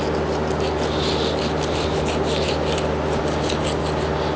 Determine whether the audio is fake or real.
real